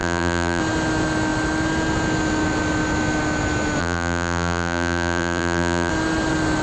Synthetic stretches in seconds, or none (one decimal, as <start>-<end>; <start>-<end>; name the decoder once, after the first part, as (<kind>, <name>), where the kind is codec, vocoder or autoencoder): 0.0-0.6 (vocoder, BigVGAN v2); 3.8-5.9